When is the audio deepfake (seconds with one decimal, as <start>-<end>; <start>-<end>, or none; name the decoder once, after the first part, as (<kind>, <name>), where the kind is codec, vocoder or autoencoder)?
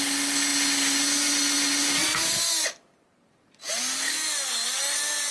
none